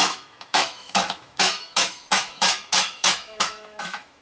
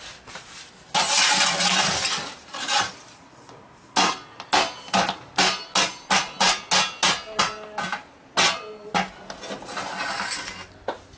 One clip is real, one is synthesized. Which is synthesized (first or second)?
first